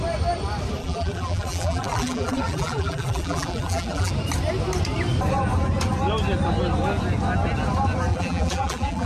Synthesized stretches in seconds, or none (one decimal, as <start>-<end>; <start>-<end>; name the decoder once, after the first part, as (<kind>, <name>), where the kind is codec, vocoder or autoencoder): 0.8-4.1 (vocoder, BigVGAN v2); 8.1-9.1